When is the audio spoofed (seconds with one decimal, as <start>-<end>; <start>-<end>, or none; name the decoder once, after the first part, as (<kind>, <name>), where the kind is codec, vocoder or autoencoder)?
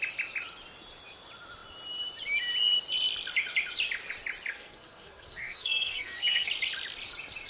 4.5-6.5 (codec, SNAC)